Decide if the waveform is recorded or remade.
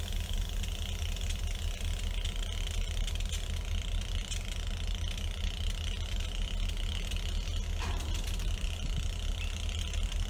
recorded